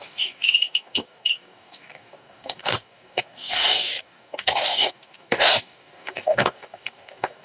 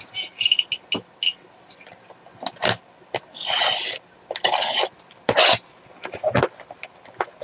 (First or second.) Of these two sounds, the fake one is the first